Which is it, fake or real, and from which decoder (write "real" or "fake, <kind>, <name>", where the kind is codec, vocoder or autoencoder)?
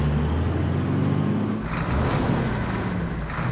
real